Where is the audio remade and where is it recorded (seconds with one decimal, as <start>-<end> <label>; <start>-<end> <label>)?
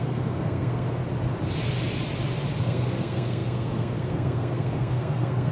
0.0-1.0 remade; 1.0-2.6 recorded; 2.6-5.5 remade